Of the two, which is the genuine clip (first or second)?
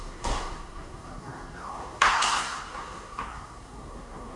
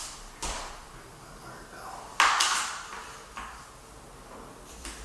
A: second